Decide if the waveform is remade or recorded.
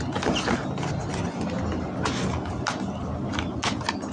recorded